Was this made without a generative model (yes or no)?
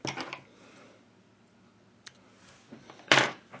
yes